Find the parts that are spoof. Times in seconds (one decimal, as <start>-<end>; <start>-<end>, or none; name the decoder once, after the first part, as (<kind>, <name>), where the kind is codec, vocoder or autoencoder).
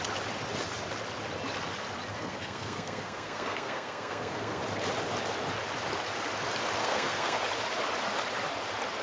2.1-4.6 (codec, SNAC); 6.8-7.4